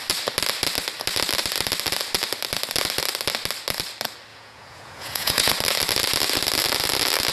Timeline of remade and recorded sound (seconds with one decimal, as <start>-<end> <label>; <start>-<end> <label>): 0.0-4.3 recorded; 4.3-5.5 remade; 5.5-7.3 recorded